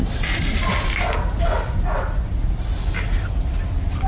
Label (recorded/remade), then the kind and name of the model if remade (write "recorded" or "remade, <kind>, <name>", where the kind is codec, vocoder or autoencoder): recorded